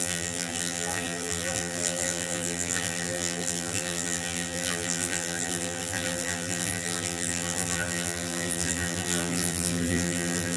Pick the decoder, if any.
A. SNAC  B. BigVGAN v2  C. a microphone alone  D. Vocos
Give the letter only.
B